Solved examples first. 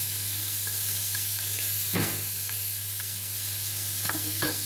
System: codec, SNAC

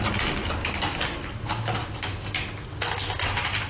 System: none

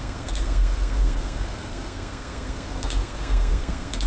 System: codec, SNAC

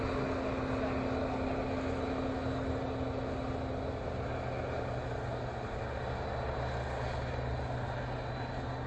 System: none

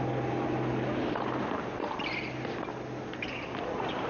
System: none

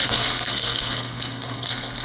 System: codec, SNAC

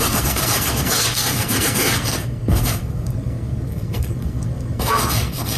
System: codec, SNAC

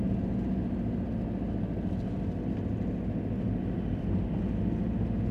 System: none